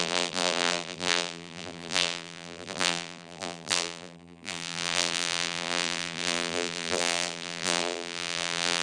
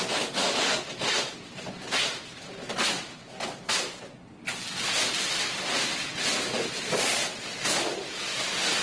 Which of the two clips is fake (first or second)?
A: first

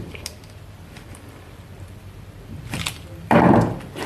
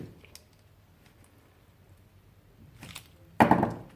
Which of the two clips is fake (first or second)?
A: first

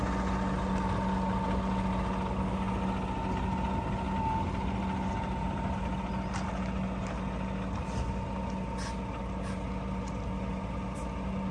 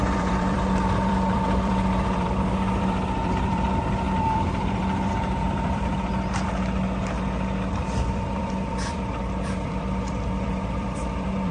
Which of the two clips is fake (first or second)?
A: second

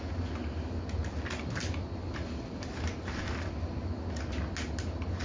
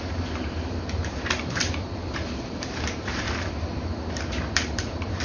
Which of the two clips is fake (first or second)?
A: second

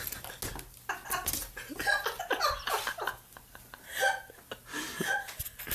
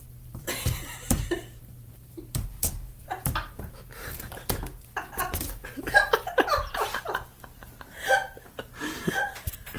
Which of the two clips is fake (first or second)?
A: second